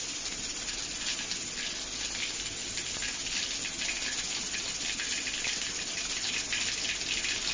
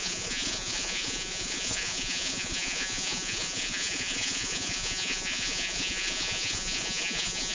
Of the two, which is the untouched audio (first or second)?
first